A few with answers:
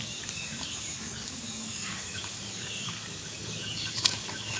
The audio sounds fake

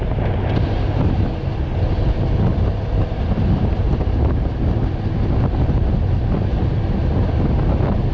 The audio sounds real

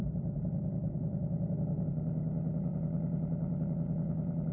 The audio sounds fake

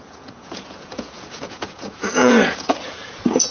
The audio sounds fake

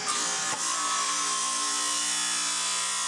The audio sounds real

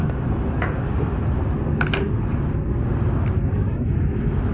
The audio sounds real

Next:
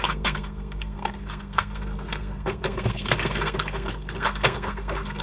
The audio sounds fake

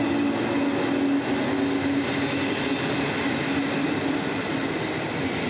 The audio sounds real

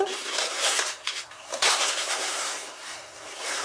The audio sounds fake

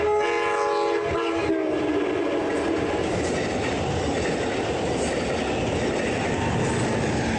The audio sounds real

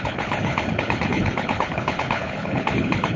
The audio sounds fake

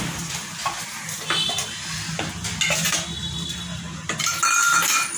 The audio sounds real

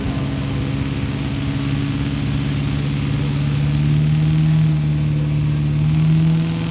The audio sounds real